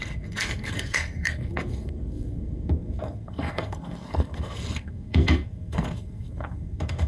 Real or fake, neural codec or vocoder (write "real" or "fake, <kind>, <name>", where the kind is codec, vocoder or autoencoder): fake, codec, SNAC